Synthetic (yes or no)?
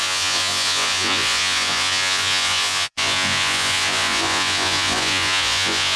yes